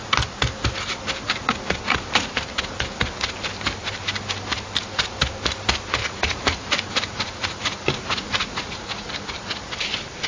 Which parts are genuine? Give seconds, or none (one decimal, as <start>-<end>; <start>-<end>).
0.0-6.0; 9.1-10.3

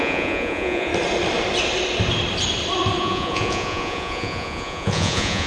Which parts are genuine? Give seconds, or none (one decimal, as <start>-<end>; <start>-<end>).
0.9-3.0

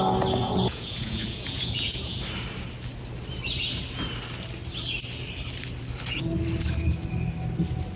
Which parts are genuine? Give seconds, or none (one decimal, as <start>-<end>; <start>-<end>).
0.0-0.4; 2.2-8.0